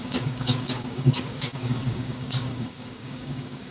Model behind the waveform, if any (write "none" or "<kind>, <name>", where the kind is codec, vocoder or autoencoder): codec, DAC